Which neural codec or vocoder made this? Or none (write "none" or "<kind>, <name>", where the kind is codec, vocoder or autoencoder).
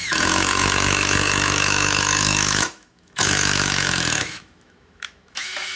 autoencoder, DAC-VAE